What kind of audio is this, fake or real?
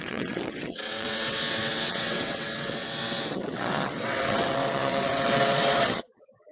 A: fake